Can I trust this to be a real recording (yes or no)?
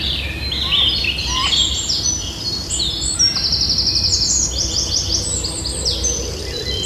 yes